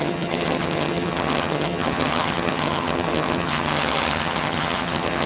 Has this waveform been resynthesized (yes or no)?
yes